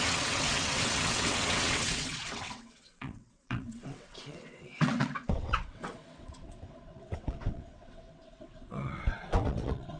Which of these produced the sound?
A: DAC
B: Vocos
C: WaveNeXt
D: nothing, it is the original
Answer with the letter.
C